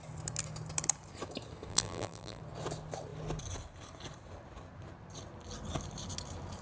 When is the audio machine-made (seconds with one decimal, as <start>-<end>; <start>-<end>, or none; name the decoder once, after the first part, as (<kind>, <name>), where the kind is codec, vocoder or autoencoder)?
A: 1.7-2.4 (vocoder, BigVGAN v2)